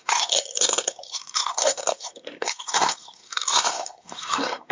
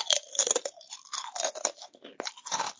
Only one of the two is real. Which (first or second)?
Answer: second